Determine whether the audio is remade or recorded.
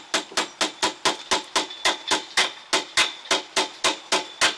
recorded